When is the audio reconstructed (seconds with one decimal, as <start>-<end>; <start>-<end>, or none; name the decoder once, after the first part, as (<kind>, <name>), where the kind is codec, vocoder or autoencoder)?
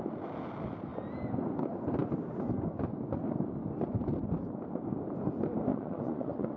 5.7-6.6 (vocoder, Vocos)